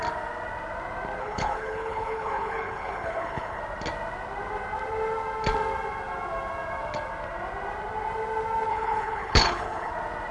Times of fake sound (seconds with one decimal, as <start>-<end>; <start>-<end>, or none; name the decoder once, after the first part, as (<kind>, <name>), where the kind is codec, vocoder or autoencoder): 1.2-3.6 (codec, HILCodec); 8.7-9.9